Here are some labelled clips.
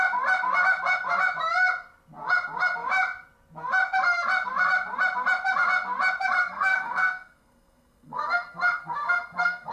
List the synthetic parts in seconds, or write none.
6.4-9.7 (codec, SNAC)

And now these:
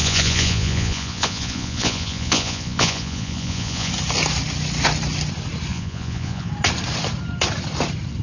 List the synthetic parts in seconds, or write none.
0.0-3.9 (vocoder, Vocos); 5.7-6.5

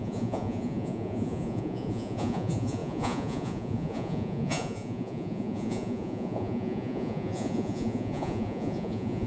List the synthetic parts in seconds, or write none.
0.0-9.3 (vocoder, Vocos)